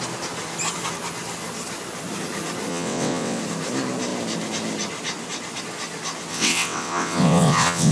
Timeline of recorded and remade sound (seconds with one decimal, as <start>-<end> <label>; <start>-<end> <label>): 0.0-2.7 recorded; 2.7-3.4 remade; 3.4-6.3 recorded; 6.3-7.9 remade